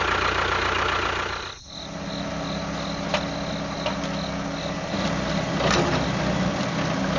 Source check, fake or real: real